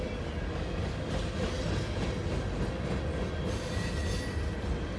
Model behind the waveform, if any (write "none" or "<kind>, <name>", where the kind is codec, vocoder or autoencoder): none